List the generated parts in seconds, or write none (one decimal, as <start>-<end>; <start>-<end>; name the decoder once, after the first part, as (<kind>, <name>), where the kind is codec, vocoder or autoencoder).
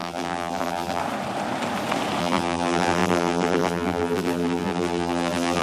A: 0.0-1.0 (vocoder, BigVGAN v2); 2.2-5.6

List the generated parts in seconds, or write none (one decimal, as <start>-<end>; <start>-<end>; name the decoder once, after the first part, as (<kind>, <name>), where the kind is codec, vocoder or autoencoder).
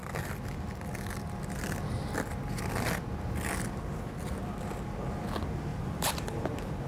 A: 5.7-6.4 (vocoder, BigVGAN v2)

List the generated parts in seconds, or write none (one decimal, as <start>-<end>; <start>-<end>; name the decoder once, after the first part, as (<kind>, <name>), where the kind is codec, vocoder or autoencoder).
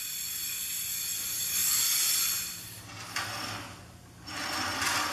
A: 0.6-1.6 (vocoder, BigVGAN v2)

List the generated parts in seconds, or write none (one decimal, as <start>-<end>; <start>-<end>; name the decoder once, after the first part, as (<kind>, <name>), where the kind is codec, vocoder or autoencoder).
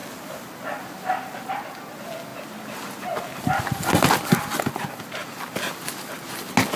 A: none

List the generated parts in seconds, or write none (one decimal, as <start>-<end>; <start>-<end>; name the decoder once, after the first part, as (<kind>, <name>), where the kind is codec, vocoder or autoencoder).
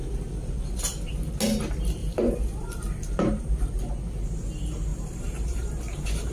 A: 2.0-3.7 (vocoder, BigVGAN v2); 4.9-6.3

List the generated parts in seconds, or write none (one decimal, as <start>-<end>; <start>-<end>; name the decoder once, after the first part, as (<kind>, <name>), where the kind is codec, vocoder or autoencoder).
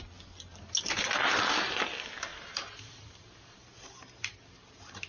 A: 2.3-4.4 (vocoder, BigVGAN v2)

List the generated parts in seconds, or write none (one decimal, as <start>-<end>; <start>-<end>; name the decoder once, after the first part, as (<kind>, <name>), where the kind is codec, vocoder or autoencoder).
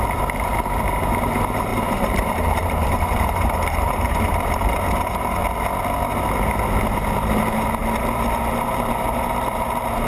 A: 0.0-5.4 (vocoder, BigVGAN v2); 6.8-7.8; 8.4-10.1